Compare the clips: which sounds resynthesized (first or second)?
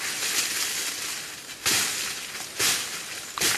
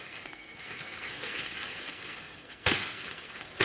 second